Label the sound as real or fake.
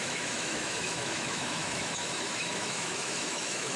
fake